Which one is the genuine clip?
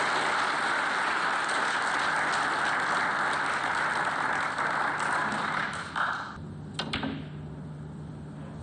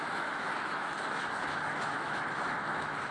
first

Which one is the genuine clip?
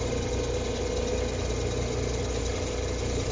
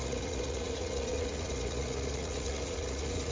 first